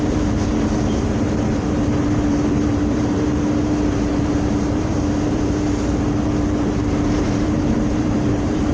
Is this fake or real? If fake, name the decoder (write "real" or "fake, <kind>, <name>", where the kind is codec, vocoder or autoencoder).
fake, vocoder, BigVGAN v2